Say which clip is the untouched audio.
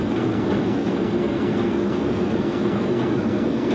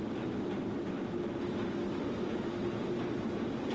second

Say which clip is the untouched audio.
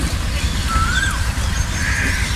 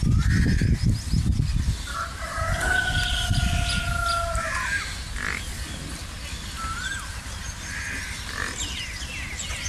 second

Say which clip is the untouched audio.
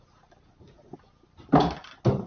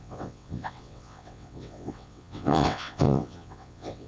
first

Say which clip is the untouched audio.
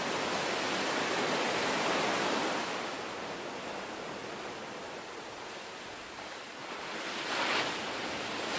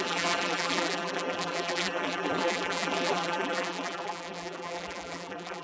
first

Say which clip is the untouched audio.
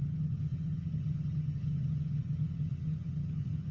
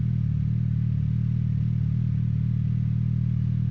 second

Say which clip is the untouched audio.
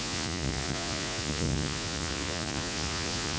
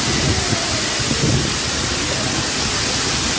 second